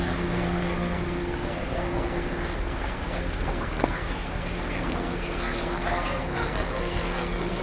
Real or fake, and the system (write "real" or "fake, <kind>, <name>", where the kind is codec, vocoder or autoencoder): fake, codec, SNAC